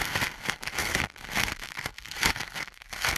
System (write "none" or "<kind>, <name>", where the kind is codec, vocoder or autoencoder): codec, SNAC